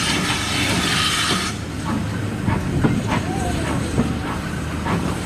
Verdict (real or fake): real